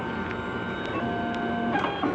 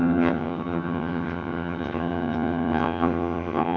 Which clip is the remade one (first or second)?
second